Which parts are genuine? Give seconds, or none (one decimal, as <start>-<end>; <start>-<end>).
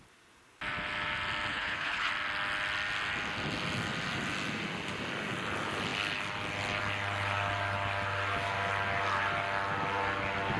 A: 0.0-1.5; 2.1-10.6